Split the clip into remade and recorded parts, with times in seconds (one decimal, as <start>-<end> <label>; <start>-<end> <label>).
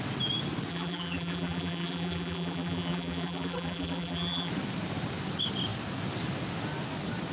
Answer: 0.0-0.7 recorded; 0.7-4.5 remade; 4.5-7.3 recorded